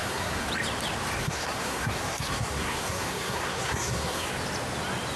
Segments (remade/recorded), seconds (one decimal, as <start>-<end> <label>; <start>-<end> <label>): 0.0-0.5 remade; 0.5-1.2 recorded; 1.2-4.3 remade; 4.3-5.2 recorded